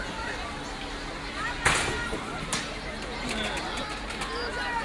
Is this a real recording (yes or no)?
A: yes